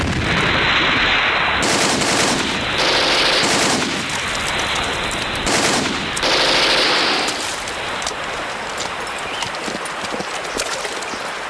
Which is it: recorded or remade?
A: recorded